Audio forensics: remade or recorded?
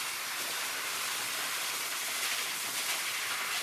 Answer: remade